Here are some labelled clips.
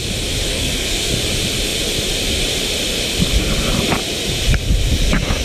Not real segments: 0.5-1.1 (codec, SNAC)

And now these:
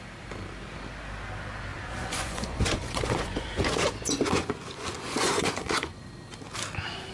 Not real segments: 1.7-6.0 (vocoder, Vocos)

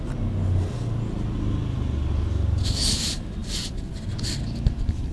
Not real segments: none

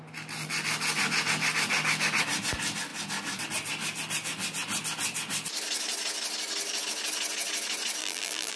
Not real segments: 8.0-8.6 (vocoder, BigVGAN v2)

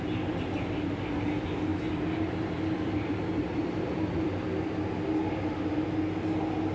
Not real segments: 1.7-4.3 (vocoder, BigVGAN v2)

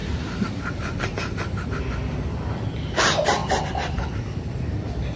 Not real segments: 0.0-1.7 (vocoder, BigVGAN v2)

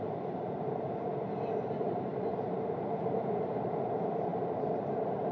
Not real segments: 0.0-1.1 (vocoder, BigVGAN v2); 1.7-5.3